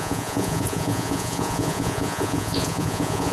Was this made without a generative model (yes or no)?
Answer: no